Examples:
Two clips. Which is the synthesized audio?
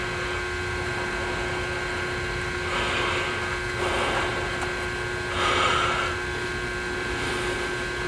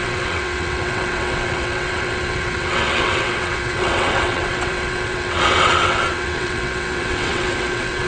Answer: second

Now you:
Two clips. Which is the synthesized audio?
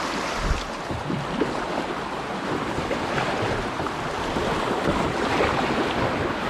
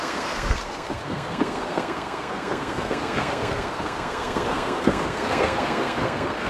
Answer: second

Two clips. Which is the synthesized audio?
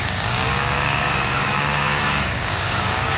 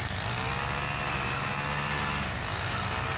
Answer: first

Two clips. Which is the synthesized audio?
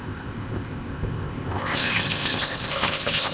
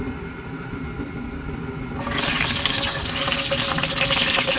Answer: first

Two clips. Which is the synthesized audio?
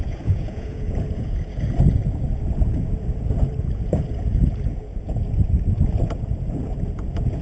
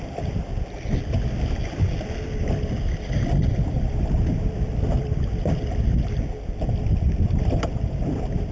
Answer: first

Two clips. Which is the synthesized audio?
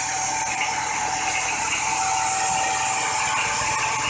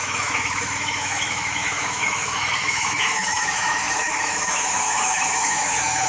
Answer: second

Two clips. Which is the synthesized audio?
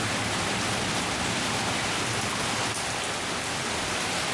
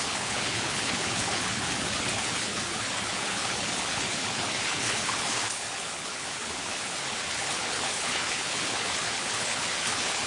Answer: second